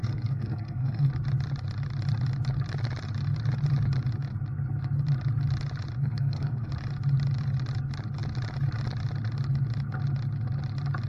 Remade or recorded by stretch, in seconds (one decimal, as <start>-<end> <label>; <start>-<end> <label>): 0.0-1.1 remade; 1.1-6.0 recorded; 6.0-6.7 remade; 6.7-11.1 recorded